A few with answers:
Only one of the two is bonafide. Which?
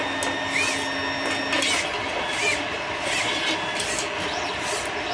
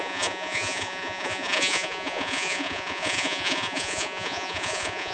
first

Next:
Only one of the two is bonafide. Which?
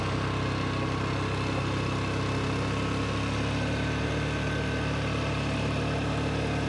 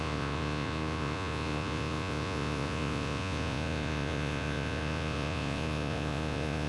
first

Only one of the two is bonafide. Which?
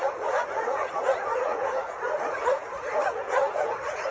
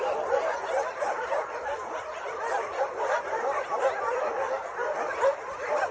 second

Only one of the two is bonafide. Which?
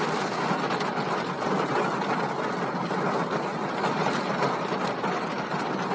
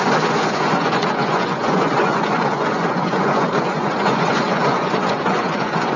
first